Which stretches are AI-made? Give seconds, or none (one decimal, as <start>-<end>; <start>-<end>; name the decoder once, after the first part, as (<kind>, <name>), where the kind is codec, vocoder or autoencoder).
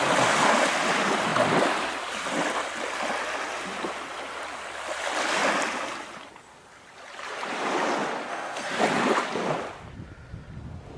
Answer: 8.3-8.8 (codec, SNAC)